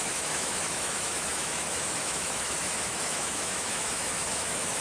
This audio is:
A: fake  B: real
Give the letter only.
A